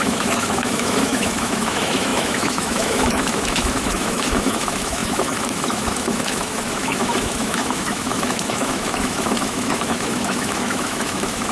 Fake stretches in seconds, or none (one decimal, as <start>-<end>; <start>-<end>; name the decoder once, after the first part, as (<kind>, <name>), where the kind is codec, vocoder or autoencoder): 0.0-11.5 (autoencoder, DAC-VAE)